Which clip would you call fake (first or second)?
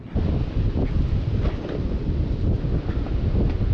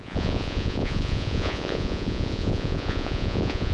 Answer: second